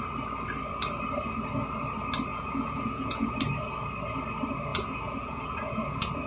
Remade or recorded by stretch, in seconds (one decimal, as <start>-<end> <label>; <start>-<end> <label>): 0.0-2.3 recorded; 2.3-3.3 remade; 3.3-4.7 recorded; 4.7-6.3 remade